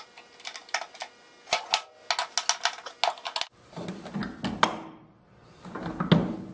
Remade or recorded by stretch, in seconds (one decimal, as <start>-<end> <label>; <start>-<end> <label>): 0.0-6.5 recorded